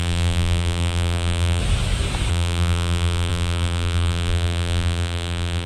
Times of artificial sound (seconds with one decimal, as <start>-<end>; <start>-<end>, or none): 0.0-1.6; 2.3-5.7